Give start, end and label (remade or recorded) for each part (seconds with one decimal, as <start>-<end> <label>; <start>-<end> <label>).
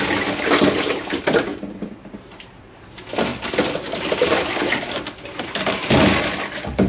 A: 0.0-1.5 recorded; 1.5-2.8 remade; 2.8-3.3 recorded; 3.3-6.9 remade